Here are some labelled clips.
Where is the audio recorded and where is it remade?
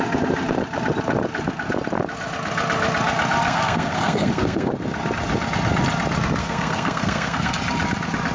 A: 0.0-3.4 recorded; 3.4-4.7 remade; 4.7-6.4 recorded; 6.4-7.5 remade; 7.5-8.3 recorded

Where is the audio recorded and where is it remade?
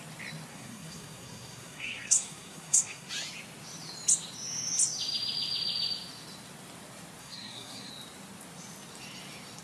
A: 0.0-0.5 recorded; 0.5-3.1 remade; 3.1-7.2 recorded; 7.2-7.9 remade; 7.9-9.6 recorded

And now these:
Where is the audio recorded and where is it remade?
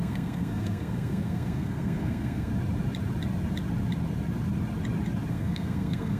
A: 0.0-2.5 remade; 2.5-5.3 recorded; 5.3-6.2 remade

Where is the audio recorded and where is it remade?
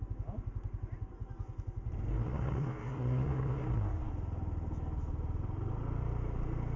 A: 0.0-2.1 recorded; 2.1-4.1 remade; 4.1-6.8 recorded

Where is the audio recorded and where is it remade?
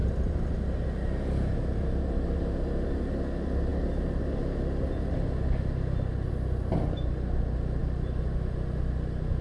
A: 0.0-9.4 recorded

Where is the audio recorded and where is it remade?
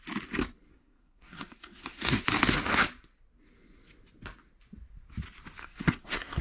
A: 0.0-0.7 recorded; 0.7-2.2 remade; 2.2-5.6 recorded; 5.6-6.4 remade